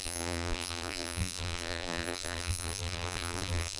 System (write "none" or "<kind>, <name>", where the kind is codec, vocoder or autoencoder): vocoder, BigVGAN v2